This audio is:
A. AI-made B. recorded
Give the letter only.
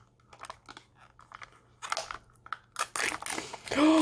B